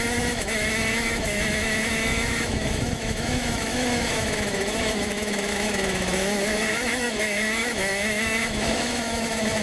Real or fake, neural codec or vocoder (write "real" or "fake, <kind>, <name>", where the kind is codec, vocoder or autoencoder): fake, autoencoder, DAC-VAE